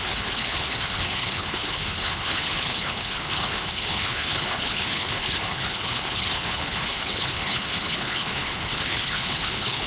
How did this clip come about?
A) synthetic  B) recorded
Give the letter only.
A